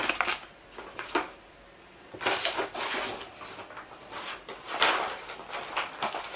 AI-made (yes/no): no